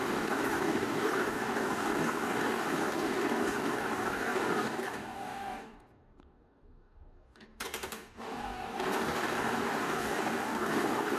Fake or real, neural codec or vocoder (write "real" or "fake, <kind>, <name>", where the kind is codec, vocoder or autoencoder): fake, codec, DAC